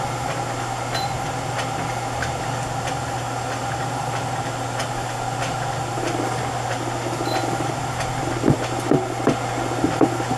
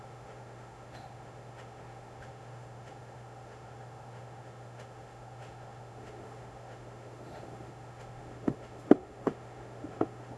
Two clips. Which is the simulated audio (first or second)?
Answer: second